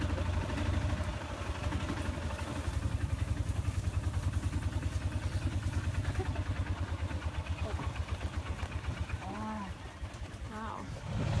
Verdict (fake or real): real